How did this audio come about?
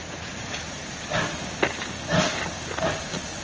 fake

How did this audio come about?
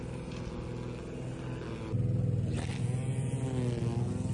real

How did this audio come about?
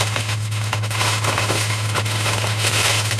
fake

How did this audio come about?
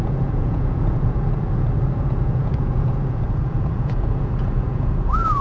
fake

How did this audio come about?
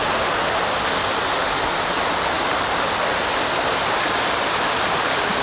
real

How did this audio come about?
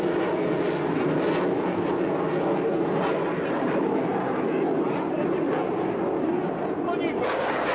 real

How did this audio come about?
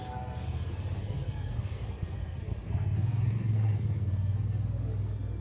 fake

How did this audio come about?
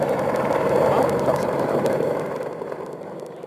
fake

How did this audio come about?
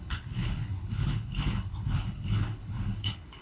fake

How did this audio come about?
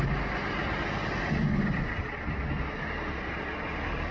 real